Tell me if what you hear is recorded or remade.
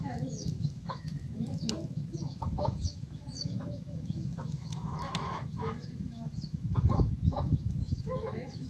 remade